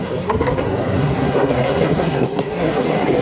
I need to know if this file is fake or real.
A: fake